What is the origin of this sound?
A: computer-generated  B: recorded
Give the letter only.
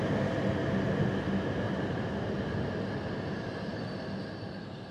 B